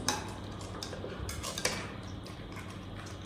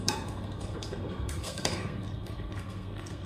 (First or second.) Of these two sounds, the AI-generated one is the second